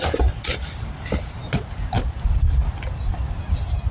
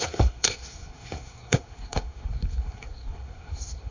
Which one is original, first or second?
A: first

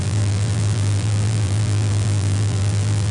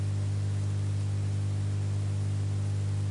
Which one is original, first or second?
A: second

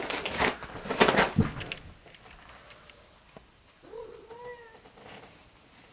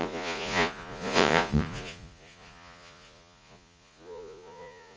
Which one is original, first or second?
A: first